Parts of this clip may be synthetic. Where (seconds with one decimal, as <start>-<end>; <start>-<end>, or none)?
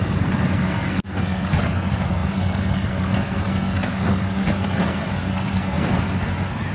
0.0-6.7